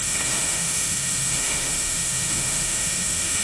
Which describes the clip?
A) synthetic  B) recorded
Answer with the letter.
A